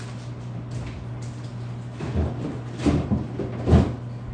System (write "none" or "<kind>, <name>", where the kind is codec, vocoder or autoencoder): none